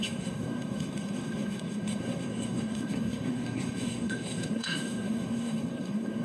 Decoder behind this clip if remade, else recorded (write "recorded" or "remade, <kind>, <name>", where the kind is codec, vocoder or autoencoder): remade, codec, SNAC